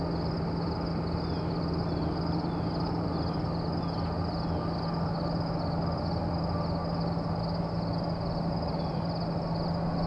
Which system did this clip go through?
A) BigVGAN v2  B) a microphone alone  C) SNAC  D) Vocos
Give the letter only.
B